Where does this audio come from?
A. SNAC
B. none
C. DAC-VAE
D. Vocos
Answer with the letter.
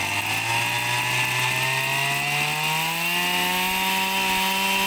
B